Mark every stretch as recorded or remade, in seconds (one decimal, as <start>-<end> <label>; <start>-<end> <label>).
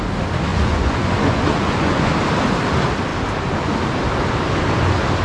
0.0-0.5 recorded; 0.5-2.1 remade; 2.1-5.2 recorded